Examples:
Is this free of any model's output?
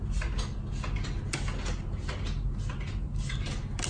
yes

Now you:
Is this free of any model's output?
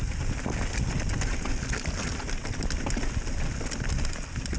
yes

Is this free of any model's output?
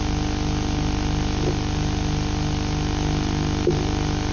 yes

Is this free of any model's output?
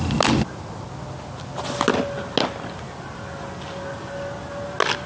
yes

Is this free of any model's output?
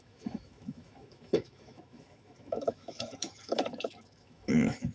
no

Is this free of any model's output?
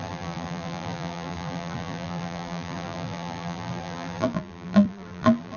no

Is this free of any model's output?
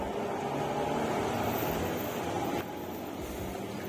yes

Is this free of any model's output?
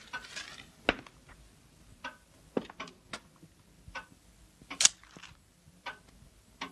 yes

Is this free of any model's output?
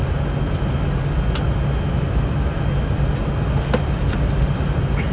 yes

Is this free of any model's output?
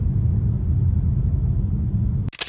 yes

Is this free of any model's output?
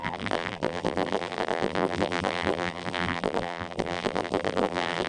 no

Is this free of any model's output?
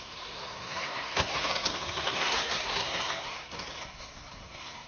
no